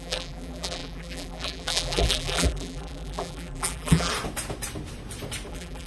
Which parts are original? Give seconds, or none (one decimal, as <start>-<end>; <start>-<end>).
4.1-5.5